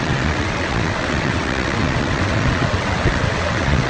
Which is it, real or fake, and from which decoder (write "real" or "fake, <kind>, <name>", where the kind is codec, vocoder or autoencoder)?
fake, vocoder, WaveNeXt